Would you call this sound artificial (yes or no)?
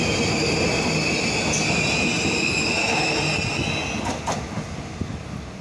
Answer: no